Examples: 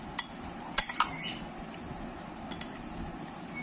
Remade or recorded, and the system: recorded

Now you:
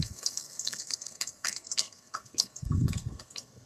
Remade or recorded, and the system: remade, codec, SNAC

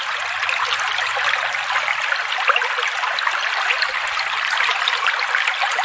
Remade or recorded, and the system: recorded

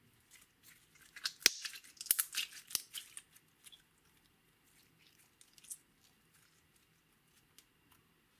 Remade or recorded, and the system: recorded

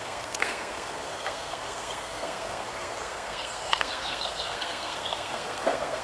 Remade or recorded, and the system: remade, codec, SNAC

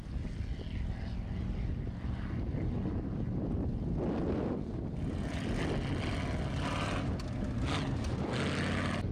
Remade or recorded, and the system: recorded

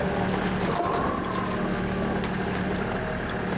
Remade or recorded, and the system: recorded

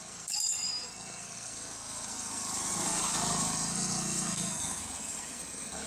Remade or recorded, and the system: remade, codec, SNAC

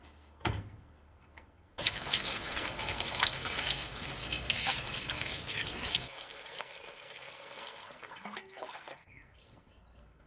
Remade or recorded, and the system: remade, codec, SNAC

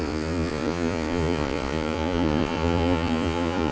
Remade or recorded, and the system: remade, vocoder, Vocos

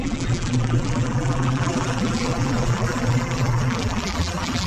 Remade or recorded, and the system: remade, vocoder, BigVGAN v2